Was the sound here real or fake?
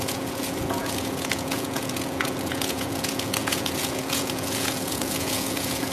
fake